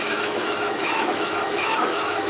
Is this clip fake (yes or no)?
yes